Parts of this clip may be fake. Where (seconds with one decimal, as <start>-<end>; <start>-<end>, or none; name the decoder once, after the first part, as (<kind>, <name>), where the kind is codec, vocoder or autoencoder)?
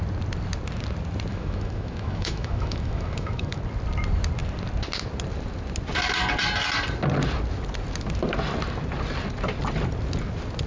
1.3-3.6 (autoencoder, DAC-VAE)